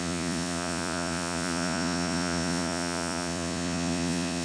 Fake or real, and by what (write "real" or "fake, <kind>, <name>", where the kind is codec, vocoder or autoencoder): fake, vocoder, Vocos